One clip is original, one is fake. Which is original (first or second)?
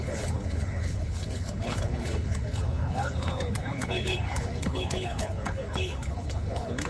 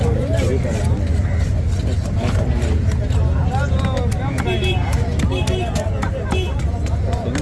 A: second